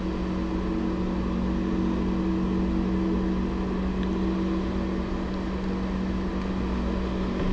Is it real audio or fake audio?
real